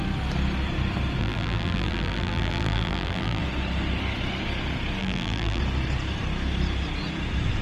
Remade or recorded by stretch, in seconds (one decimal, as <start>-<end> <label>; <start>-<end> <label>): 0.0-1.2 recorded; 1.2-3.4 remade; 3.4-5.0 recorded; 5.0-5.6 remade; 5.6-7.6 recorded